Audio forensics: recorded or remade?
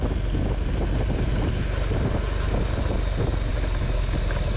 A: recorded